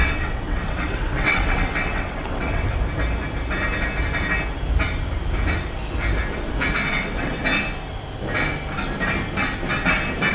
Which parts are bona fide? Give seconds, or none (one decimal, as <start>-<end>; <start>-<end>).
2.7-6.9; 7.4-10.3